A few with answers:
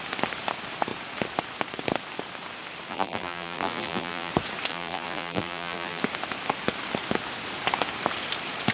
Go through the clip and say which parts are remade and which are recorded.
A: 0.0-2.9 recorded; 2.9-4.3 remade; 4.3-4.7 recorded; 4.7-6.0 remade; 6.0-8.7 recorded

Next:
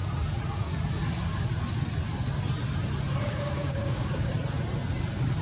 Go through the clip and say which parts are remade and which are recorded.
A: 0.0-3.2 recorded; 3.2-4.3 remade; 4.3-5.4 recorded

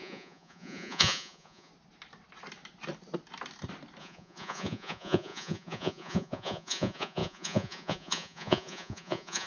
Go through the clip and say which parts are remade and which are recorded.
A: 0.0-1.7 remade; 1.7-4.0 recorded; 4.0-9.5 remade

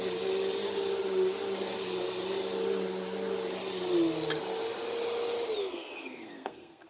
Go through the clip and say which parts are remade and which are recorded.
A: 0.0-5.6 recorded; 5.6-6.9 remade

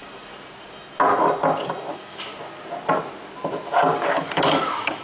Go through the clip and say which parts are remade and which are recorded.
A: 0.0-1.9 recorded; 1.9-2.3 remade; 2.3-4.2 recorded; 4.2-5.0 remade

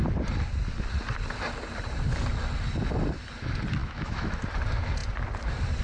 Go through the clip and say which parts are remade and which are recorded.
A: 0.0-3.8 recorded; 3.8-4.4 remade; 4.4-5.8 recorded

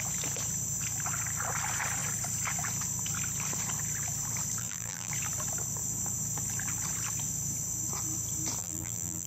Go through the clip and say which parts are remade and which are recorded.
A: 0.0-4.6 recorded; 4.6-5.1 remade; 5.1-8.6 recorded; 8.6-9.3 remade